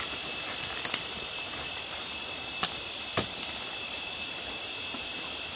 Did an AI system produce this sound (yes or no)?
no